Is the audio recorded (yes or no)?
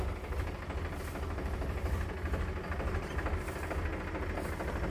yes